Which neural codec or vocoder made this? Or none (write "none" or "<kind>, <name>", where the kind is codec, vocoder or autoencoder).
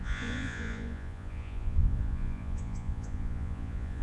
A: vocoder, Vocos